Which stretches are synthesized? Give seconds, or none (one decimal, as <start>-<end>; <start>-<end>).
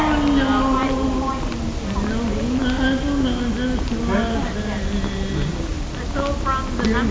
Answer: none